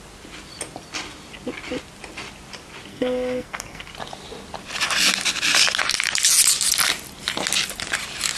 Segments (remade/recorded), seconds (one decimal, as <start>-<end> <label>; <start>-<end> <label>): 0.0-2.9 recorded; 2.9-3.9 remade; 3.9-8.4 recorded